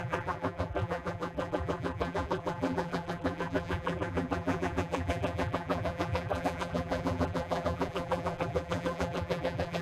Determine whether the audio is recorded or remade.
remade